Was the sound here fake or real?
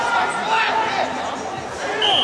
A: real